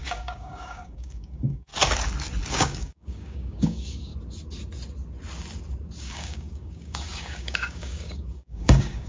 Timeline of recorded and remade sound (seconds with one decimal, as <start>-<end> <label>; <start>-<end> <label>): 0.0-1.7 remade; 1.7-2.5 recorded; 2.5-4.1 remade; 4.1-6.0 recorded; 6.0-9.1 remade

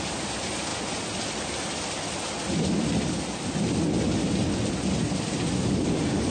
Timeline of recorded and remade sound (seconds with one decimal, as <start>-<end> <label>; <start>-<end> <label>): 0.0-6.3 recorded

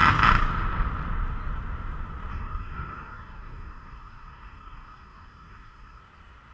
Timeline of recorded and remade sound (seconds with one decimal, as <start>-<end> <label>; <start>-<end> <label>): 0.0-2.3 recorded; 2.3-6.0 remade; 6.0-6.5 recorded

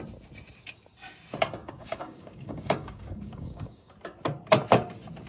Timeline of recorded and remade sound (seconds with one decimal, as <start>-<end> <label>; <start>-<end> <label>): 0.0-1.6 recorded; 1.6-3.9 remade; 3.9-5.3 recorded

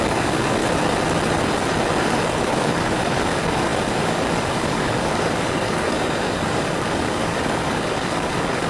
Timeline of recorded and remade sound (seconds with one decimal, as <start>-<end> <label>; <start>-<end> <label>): 0.0-0.6 remade; 0.6-2.0 recorded; 2.0-8.7 remade

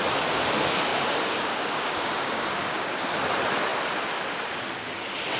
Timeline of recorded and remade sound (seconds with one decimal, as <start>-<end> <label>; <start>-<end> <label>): 0.0-0.9 recorded; 0.9-2.9 remade; 2.9-5.4 recorded

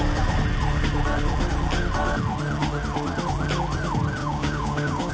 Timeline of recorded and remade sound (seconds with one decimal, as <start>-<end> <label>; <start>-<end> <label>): 0.0-4.2 recorded; 4.2-5.1 remade